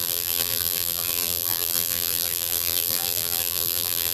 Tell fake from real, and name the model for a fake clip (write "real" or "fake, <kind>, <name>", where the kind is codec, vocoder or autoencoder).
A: fake, vocoder, BigVGAN v2